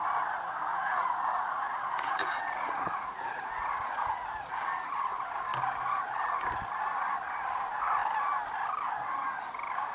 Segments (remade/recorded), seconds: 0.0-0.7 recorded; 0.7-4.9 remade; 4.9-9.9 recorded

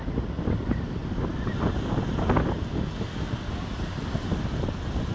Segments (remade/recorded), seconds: 0.0-5.1 recorded

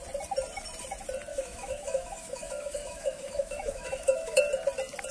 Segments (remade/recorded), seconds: 0.0-1.3 recorded; 1.3-4.4 remade; 4.4-5.1 recorded

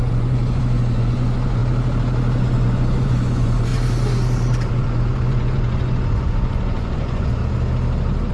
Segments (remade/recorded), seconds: 0.0-1.6 remade; 1.6-2.4 recorded; 2.4-3.7 remade; 3.7-4.7 recorded; 4.7-7.4 remade; 7.4-8.3 recorded

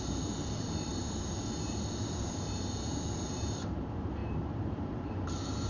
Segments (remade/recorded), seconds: 0.0-5.7 remade

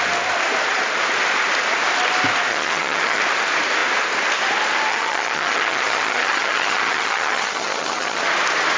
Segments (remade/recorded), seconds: 0.0-2.5 recorded; 2.5-3.2 remade; 3.2-4.9 recorded; 4.9-8.2 remade; 8.2-8.8 recorded

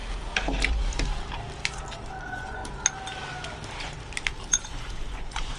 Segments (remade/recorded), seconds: 0.0-2.2 recorded; 2.2-2.6 remade; 2.6-4.5 recorded; 4.5-5.6 remade